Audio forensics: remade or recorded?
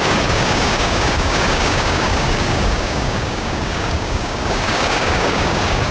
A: remade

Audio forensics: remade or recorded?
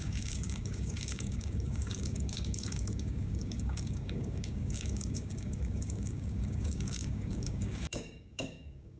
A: remade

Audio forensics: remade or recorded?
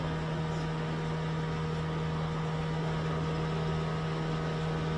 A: recorded